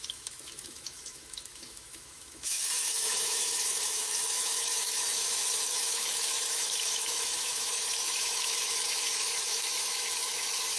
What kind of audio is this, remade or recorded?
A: remade